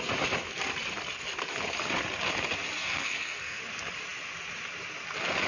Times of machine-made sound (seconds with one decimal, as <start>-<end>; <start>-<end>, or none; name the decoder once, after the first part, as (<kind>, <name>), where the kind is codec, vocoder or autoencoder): 2.8-3.6 (codec, SNAC)